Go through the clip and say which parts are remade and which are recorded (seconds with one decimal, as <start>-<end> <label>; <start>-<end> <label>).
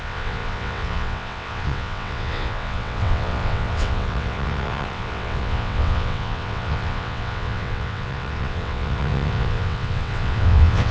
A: 0.0-10.9 remade